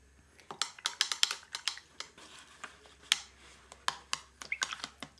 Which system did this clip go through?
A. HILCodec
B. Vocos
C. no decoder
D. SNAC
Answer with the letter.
C